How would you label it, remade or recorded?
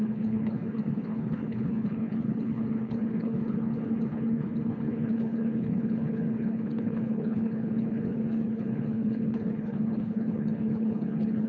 remade